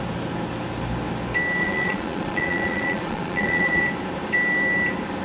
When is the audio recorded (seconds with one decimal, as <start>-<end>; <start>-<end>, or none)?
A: 0.0-1.6; 3.8-5.2